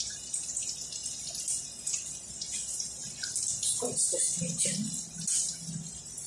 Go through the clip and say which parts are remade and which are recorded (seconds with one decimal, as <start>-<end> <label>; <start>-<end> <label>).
0.0-6.3 recorded